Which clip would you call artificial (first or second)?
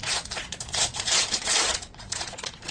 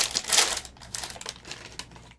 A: first